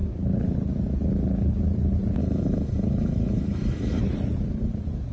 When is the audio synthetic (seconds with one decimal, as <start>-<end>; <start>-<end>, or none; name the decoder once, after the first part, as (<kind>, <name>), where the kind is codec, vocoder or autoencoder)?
2.2-4.0 (autoencoder, DAC-VAE)